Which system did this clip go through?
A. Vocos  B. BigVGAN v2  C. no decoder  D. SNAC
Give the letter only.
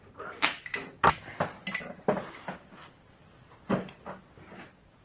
C